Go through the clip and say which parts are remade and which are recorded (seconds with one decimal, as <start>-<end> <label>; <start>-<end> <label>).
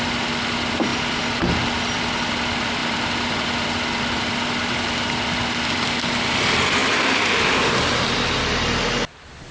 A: 0.0-9.5 recorded